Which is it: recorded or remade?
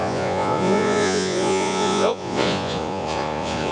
remade